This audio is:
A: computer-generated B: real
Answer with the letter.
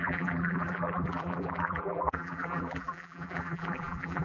A